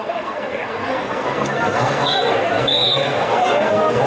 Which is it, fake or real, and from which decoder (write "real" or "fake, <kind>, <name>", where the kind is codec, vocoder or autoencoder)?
fake, codec, SNAC